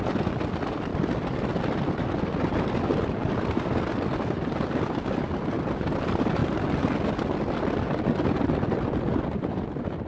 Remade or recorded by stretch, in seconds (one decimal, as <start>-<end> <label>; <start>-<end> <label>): 0.0-10.1 recorded